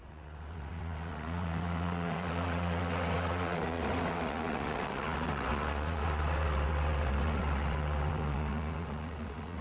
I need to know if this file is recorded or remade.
remade